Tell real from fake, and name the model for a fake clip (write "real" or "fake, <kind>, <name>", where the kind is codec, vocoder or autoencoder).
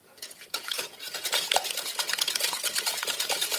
fake, vocoder, Vocos